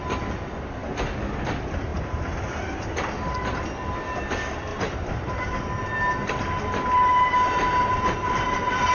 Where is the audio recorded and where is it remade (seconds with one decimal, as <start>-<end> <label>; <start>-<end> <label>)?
0.0-4.7 recorded; 4.7-5.5 remade; 5.5-8.9 recorded